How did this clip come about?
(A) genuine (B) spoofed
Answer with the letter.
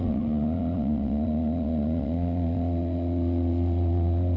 B